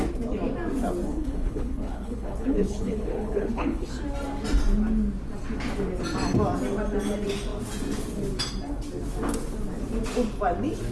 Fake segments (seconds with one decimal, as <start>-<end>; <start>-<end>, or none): 1.1-3.9